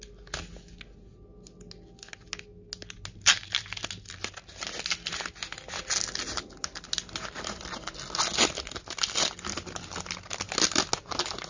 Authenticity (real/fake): real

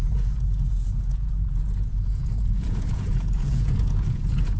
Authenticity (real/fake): fake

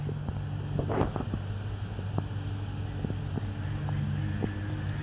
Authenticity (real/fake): real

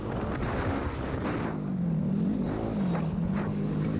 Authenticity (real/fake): real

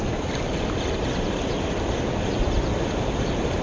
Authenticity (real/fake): real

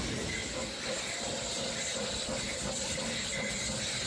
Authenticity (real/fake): real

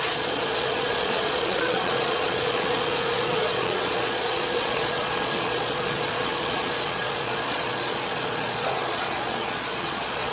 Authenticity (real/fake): fake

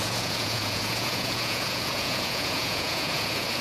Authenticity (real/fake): fake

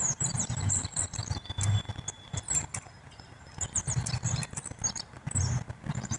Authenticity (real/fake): real